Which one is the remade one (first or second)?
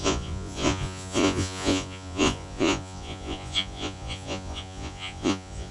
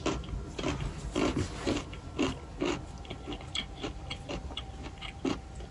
first